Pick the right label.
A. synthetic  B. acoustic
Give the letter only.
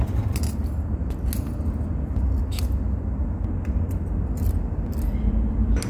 B